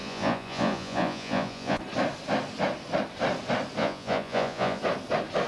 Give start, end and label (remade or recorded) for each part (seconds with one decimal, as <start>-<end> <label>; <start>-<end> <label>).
0.0-1.8 remade; 1.8-3.8 recorded; 3.8-4.8 remade; 4.8-5.5 recorded